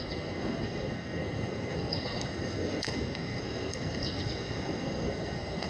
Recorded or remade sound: remade